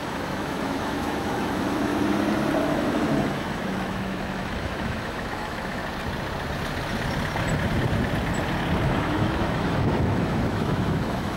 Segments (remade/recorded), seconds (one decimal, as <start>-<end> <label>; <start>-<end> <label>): 0.0-1.9 remade; 1.9-2.6 recorded; 2.6-5.8 remade; 5.8-8.8 recorded; 8.8-11.4 remade